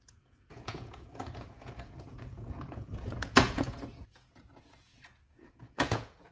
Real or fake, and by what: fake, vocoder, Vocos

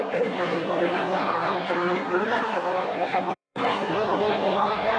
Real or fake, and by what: fake, codec, SNAC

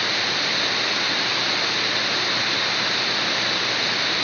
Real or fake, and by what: real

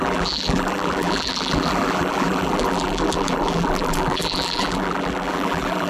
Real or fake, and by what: fake, vocoder, BigVGAN v2